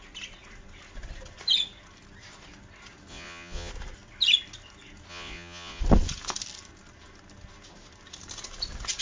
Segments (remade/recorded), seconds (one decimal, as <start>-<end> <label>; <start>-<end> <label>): 0.0-3.1 recorded; 3.1-3.7 remade; 3.7-5.1 recorded; 5.1-5.8 remade; 5.8-9.0 recorded